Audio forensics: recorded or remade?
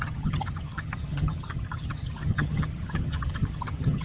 remade